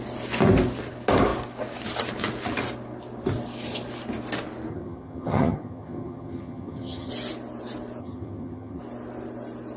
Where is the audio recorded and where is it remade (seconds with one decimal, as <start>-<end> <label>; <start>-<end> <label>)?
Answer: 0.0-4.7 recorded; 4.7-7.1 remade; 7.1-8.0 recorded; 8.0-8.8 remade; 8.8-9.8 recorded